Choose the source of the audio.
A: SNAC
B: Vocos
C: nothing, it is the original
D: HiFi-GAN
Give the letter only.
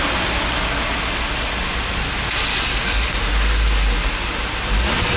C